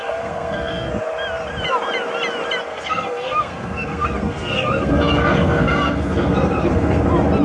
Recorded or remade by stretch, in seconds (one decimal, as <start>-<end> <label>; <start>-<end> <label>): 0.0-0.9 remade; 0.9-2.7 recorded; 2.7-7.0 remade; 7.0-7.4 recorded